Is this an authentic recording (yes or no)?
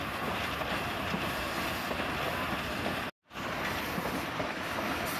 yes